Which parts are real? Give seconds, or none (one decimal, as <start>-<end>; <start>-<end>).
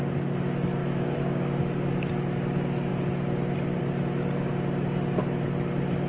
0.0-0.8; 1.6-6.1